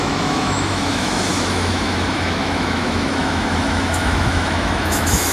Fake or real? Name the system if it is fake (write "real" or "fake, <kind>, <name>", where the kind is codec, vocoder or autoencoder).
fake, autoencoder, DAC-VAE